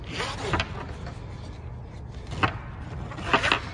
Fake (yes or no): no